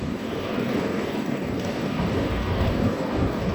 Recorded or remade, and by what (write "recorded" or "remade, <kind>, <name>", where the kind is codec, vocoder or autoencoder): remade, codec, DAC